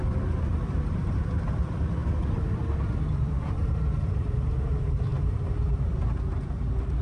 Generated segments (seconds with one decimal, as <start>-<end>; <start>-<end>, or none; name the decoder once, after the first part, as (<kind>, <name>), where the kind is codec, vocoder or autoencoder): 0.0-2.0 (vocoder, BigVGAN v2); 3.0-7.0